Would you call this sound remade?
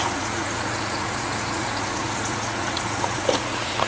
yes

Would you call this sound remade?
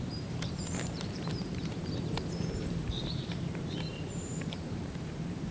yes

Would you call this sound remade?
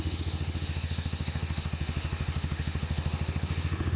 yes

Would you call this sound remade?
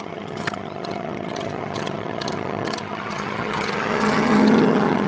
yes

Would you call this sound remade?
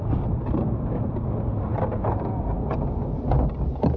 no